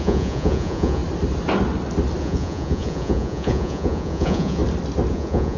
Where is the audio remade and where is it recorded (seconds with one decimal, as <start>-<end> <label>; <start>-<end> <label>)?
0.0-1.0 remade; 1.0-2.2 recorded; 2.2-4.6 remade; 4.6-5.1 recorded; 5.1-5.6 remade